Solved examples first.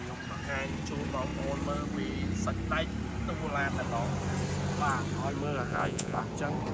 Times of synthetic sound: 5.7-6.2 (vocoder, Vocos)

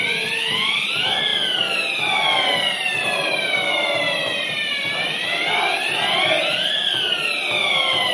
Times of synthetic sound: none

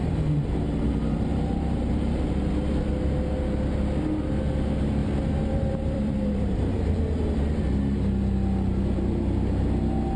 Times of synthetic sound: 0.0-2.9 (vocoder, BigVGAN v2); 5.0-7.0

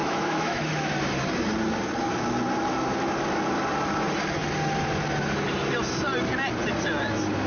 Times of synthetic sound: 0.0-0.9 (autoencoder, DAC-VAE)

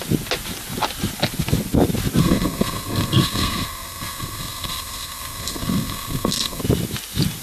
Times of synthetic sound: 2.2-6.6 (codec, SNAC)

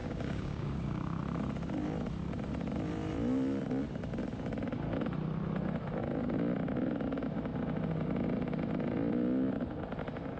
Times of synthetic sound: 0.0-1.2 (codec, DAC)

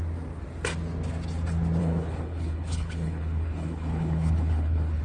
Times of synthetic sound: 1.8-5.0 (codec, HILCodec)

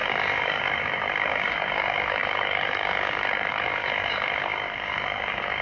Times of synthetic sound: 0.0-5.6 (codec, DAC)